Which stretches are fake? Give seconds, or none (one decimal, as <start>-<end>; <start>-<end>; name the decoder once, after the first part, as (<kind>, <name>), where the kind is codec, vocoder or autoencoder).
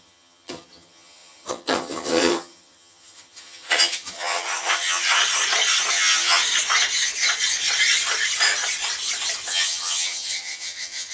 0.0-5.2 (vocoder, HiFi-GAN); 5.9-6.4; 9.5-11.1